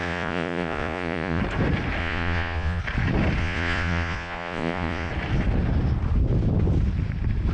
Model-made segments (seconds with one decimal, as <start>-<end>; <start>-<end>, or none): 0.0-1.4; 2.0-2.8; 3.4-5.1